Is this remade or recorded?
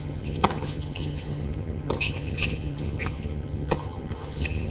remade